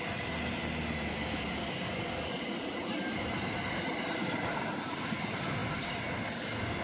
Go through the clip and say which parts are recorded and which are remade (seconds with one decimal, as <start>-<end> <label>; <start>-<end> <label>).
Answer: 0.0-6.8 recorded